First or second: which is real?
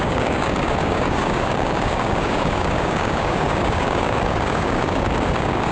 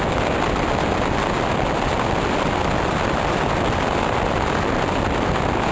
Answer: second